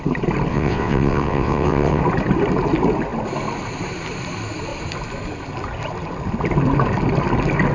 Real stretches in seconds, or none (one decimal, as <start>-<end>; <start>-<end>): 0.0-0.5; 2.0-7.7